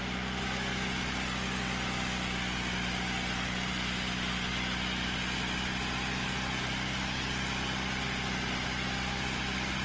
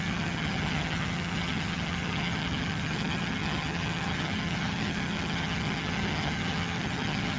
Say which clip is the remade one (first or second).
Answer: second